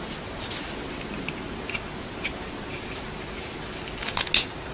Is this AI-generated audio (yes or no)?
no